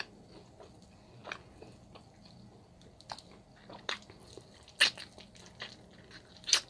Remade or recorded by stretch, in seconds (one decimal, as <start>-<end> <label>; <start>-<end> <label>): 0.0-6.7 recorded